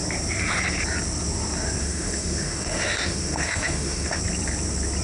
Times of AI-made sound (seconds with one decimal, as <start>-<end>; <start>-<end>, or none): 1.8-4.2

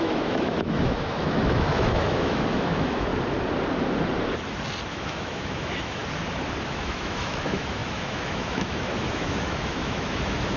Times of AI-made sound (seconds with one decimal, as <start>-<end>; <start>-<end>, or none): 0.0-3.1; 4.9-6.0; 6.7-10.6